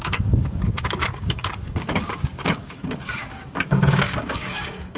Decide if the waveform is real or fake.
fake